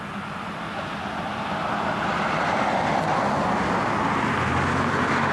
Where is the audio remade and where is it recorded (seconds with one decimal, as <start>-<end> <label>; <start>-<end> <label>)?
0.0-5.3 recorded